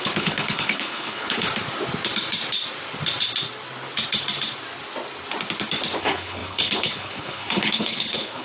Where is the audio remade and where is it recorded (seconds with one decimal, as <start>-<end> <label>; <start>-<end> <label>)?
0.0-1.5 remade; 1.5-6.0 recorded; 6.0-8.4 remade